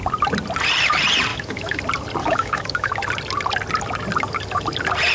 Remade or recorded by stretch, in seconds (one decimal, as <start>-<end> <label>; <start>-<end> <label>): 0.0-1.3 recorded; 1.3-1.8 remade; 1.8-2.2 recorded; 2.2-2.9 remade; 2.9-5.1 recorded